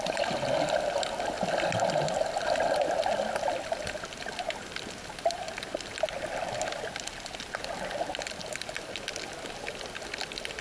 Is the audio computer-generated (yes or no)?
no